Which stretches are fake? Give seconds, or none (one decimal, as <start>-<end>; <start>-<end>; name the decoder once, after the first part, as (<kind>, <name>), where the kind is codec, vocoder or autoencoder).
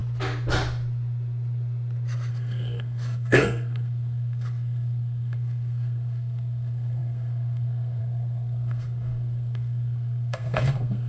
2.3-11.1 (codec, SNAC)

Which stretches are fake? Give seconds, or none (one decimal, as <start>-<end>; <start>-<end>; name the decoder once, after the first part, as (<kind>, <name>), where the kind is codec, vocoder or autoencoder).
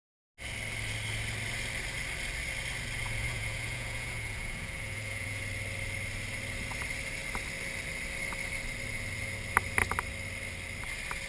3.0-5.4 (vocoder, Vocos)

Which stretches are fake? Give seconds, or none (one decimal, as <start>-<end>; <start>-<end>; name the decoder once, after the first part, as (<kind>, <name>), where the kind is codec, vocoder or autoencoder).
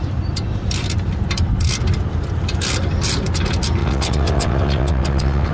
3.8-5.5 (vocoder, WaveNeXt)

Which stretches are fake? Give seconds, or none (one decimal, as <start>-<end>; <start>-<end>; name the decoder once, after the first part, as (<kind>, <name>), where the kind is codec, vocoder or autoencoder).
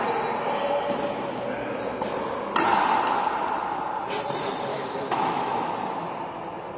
4.7-5.7 (autoencoder, DAC-VAE)